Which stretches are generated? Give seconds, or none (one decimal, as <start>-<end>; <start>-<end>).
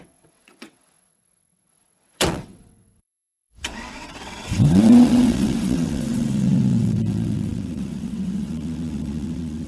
0.0-9.7